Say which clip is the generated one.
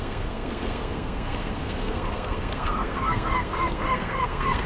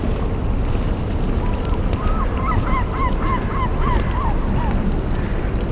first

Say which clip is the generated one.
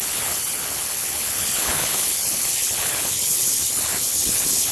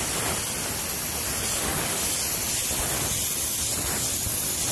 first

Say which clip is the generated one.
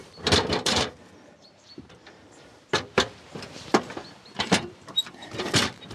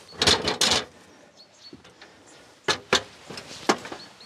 first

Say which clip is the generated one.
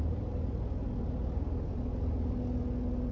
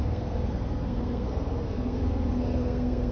second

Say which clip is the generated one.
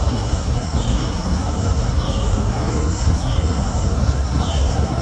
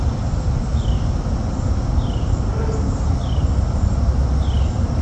first